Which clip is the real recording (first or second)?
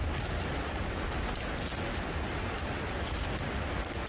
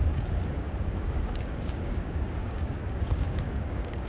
first